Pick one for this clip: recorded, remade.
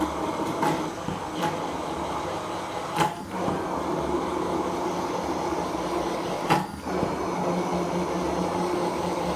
recorded